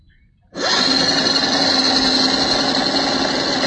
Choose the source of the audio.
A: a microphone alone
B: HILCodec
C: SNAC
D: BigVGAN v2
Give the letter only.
A